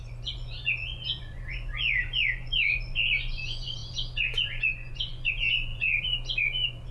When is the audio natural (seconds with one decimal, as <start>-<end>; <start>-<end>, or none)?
none